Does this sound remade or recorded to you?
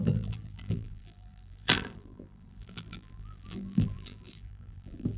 remade